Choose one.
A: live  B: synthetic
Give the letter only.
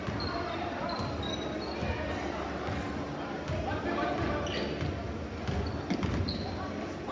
A